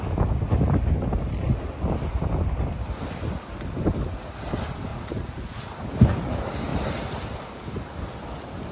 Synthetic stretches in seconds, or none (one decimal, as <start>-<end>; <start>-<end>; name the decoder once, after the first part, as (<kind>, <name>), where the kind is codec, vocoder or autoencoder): 4.9-5.6 (vocoder, Vocos)